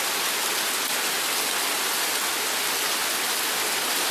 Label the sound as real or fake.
real